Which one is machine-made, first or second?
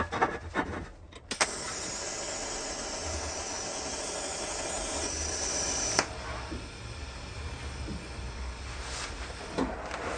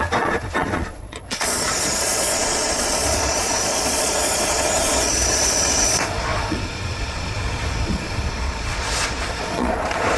second